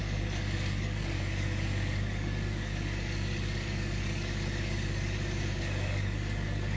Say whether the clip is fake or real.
fake